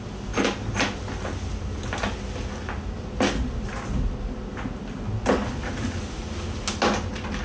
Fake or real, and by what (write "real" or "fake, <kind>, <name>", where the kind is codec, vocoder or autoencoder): real